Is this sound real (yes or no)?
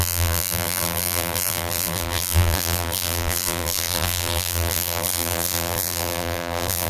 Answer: no